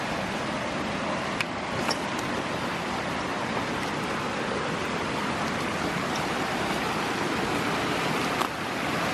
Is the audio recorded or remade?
recorded